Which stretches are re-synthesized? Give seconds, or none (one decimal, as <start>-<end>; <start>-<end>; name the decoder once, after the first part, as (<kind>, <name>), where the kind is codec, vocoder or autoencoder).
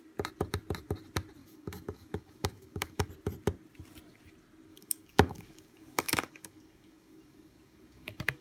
1.4-3.1 (codec, DAC); 4.7-8.4